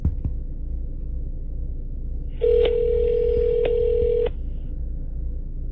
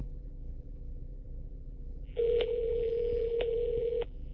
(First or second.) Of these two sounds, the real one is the first